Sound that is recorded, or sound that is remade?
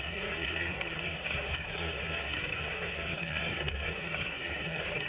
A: remade